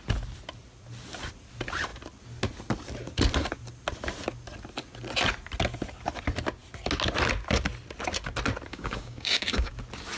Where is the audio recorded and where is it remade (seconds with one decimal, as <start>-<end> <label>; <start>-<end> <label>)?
0.0-8.7 recorded; 8.7-9.7 remade; 9.7-10.2 recorded